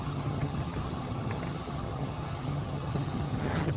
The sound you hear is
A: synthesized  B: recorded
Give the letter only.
A